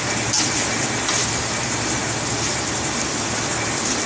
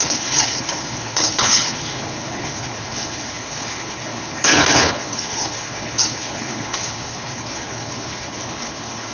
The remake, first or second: second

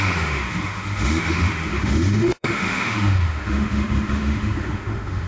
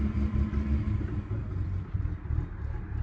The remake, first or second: first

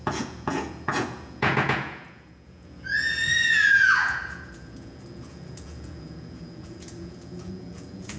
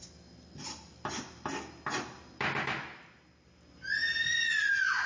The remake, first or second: first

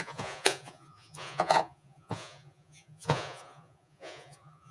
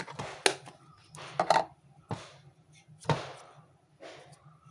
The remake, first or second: first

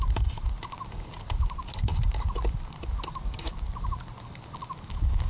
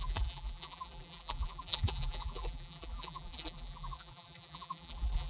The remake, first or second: second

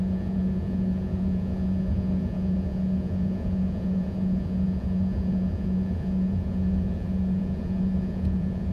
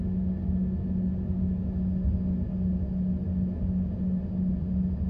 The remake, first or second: first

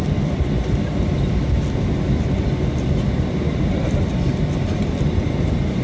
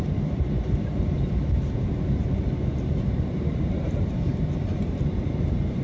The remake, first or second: second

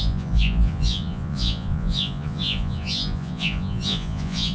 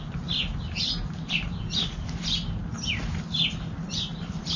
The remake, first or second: first